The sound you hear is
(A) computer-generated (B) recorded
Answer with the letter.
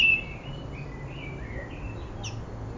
B